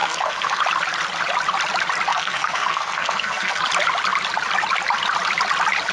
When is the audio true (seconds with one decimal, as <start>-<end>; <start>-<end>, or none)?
0.6-2.1; 3.6-5.9